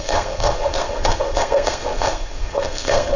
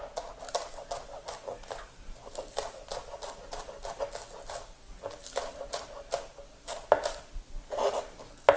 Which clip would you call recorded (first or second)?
second